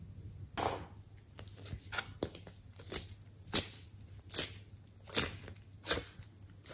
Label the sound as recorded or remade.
recorded